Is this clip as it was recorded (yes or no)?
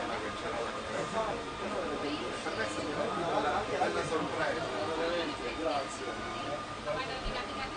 no